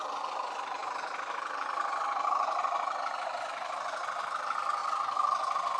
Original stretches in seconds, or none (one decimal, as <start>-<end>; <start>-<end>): 4.8-5.8